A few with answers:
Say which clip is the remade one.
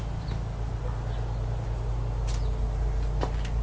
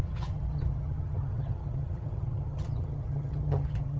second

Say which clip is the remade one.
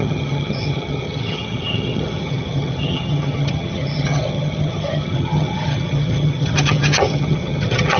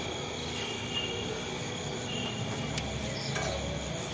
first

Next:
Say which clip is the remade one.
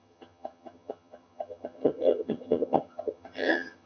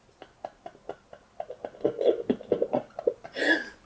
first